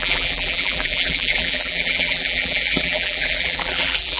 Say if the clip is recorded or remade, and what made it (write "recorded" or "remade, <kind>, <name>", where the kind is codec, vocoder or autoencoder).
remade, vocoder, BigVGAN v2